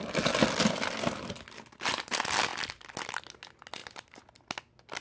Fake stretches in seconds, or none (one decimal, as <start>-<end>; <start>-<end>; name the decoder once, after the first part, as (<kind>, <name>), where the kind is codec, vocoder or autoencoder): none